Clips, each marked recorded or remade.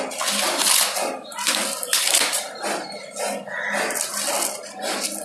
recorded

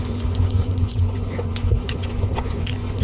remade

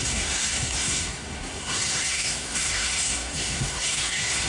remade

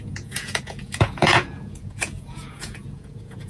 remade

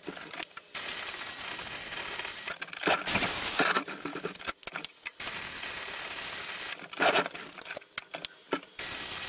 recorded